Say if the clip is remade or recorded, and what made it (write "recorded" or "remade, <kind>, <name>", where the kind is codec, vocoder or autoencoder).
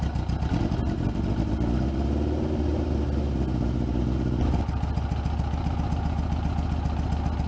recorded